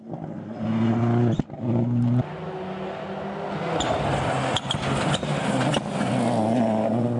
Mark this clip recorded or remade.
recorded